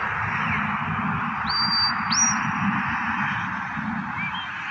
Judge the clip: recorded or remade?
recorded